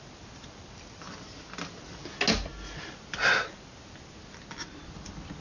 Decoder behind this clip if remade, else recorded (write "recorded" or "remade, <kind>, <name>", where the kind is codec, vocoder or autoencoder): recorded